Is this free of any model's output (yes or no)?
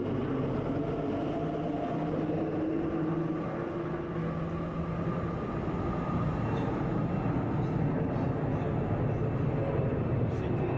yes